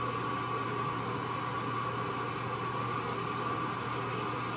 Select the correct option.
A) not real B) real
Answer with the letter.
B